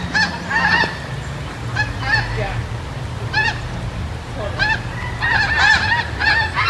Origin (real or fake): real